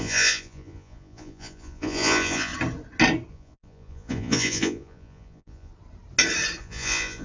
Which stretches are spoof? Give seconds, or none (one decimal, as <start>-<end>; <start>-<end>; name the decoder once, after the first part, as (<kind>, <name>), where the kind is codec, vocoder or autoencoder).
0.0-2.5 (vocoder, Vocos); 3.3-5.7; 6.6-7.2